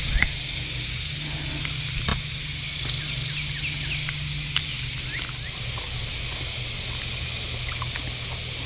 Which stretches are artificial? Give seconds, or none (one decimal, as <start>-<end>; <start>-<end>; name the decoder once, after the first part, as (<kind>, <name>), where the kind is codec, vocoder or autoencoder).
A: none